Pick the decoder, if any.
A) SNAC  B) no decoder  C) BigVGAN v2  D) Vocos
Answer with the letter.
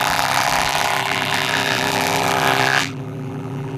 C